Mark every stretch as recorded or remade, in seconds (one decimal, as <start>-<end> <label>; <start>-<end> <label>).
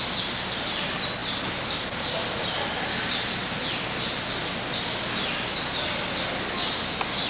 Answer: 0.0-7.3 recorded